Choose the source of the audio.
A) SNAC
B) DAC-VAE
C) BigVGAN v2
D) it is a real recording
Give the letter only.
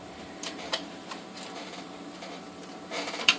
C